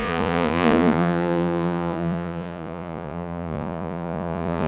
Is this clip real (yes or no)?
no